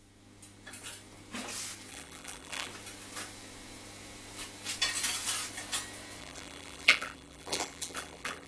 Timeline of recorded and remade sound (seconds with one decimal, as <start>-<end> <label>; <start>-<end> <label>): 0.0-1.9 recorded; 1.9-2.7 remade; 2.7-6.2 recorded; 6.2-8.5 remade